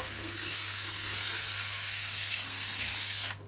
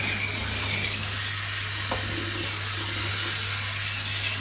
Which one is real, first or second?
second